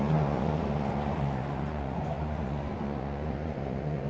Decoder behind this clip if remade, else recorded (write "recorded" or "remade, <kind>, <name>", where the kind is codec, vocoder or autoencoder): remade, vocoder, Vocos